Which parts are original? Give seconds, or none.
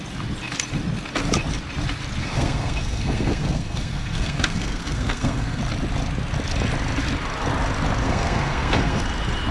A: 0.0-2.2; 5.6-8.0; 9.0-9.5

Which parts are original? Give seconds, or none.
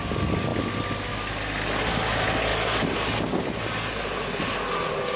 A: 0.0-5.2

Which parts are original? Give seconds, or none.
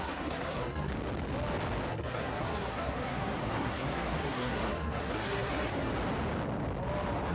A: 0.9-1.9; 5.9-7.3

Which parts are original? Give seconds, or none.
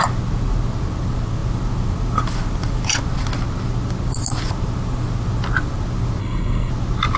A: 0.0-6.2; 6.7-7.2